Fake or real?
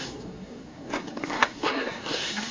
fake